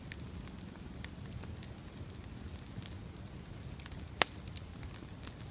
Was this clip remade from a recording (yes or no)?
no